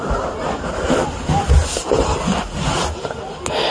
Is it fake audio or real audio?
real